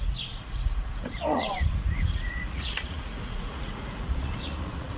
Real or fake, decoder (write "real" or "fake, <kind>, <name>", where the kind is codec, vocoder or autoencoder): fake, vocoder, Vocos